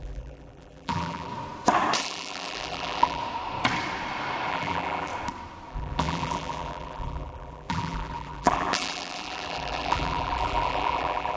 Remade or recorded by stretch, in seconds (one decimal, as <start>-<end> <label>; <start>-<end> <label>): 0.0-1.3 remade; 1.3-2.0 recorded; 2.0-3.2 remade; 3.2-4.5 recorded; 4.5-5.1 remade; 5.1-5.7 recorded; 5.7-11.4 remade